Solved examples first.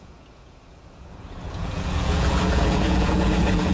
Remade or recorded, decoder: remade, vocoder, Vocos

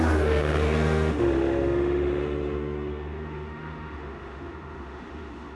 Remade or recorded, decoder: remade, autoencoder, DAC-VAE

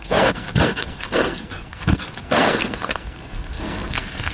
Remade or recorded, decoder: remade, codec, SNAC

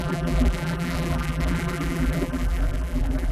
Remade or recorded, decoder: remade, vocoder, BigVGAN v2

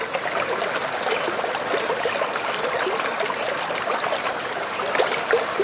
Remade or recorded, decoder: recorded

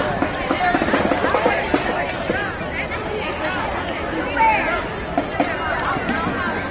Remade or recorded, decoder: recorded